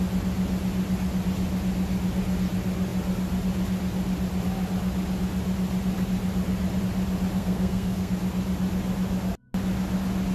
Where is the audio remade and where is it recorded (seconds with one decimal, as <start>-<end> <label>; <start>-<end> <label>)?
0.0-7.4 recorded; 7.4-8.1 remade; 8.1-10.3 recorded